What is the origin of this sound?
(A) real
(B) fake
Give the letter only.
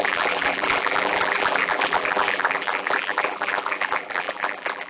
B